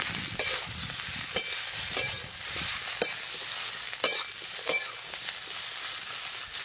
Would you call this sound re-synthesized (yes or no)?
no